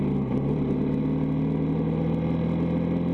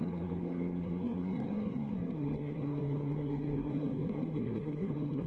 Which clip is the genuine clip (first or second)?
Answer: first